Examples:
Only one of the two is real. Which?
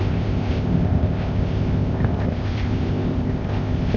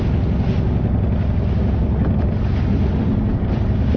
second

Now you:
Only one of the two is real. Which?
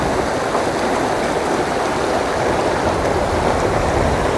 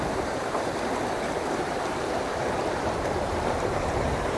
first